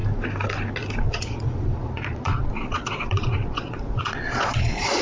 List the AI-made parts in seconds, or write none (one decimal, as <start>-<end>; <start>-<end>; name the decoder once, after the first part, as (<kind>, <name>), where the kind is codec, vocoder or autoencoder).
1.0-5.0 (vocoder, Vocos)